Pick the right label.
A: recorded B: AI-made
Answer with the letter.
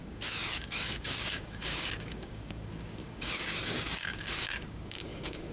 B